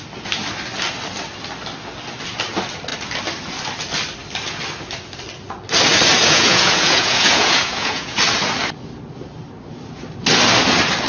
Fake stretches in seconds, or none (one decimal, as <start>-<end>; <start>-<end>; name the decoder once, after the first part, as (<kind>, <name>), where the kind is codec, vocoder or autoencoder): 6.2-8.2 (vocoder, Vocos)